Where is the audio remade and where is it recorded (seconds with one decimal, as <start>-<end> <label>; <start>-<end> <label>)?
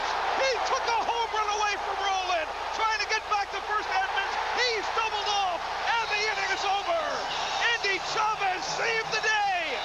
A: 0.0-3.2 recorded; 3.2-3.8 remade; 3.8-9.8 recorded